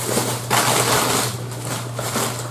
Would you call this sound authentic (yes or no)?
yes